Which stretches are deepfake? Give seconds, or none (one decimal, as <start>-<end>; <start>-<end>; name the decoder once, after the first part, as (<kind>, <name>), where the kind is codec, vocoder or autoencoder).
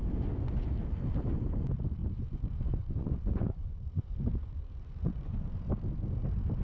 2.0-5.7 (vocoder, Vocos)